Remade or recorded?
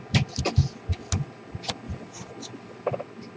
recorded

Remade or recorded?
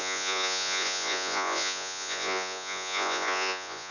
remade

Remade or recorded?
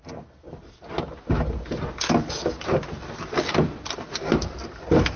recorded